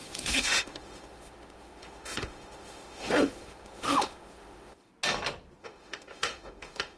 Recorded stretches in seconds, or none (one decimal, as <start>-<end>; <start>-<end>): 4.9-5.6